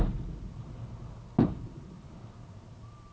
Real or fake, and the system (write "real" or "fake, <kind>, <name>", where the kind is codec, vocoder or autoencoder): real